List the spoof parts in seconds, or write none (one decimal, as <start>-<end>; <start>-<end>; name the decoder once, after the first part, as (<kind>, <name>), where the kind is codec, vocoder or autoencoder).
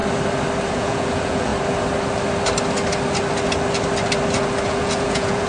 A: 0.7-1.5 (vocoder, Vocos); 4.7-5.5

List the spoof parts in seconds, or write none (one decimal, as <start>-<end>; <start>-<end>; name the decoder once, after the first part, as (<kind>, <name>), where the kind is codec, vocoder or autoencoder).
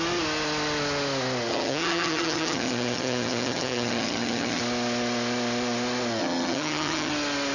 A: 1.5-4.6 (vocoder, HiFi-GAN); 6.2-7.1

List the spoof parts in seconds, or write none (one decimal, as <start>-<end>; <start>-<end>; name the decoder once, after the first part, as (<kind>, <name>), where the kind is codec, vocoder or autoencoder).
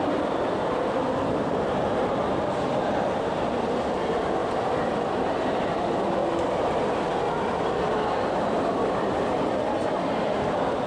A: 0.0-6.2 (vocoder, BigVGAN v2); 8.4-10.9